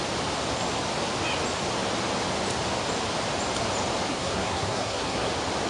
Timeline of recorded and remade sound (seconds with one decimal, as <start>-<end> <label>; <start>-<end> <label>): 0.0-4.1 recorded; 4.1-5.3 remade; 5.3-5.7 recorded